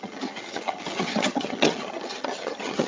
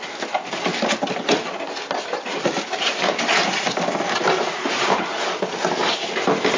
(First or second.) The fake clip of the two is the first